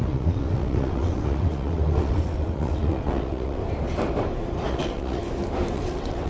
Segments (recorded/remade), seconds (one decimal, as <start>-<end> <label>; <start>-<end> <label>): 0.0-3.6 remade; 3.6-4.7 recorded; 4.7-5.2 remade; 5.2-5.7 recorded; 5.7-6.3 remade